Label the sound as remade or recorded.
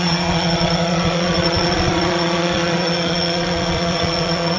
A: remade